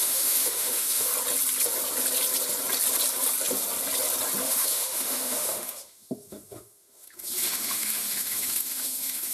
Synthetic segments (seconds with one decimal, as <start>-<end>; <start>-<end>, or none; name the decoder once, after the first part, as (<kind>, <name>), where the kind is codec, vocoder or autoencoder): 0.0-1.1 (autoencoder, DAC-VAE); 4.4-9.3